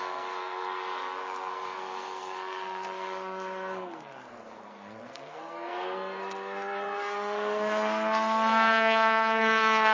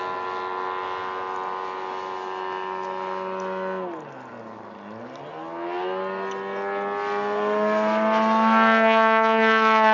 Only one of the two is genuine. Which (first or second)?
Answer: second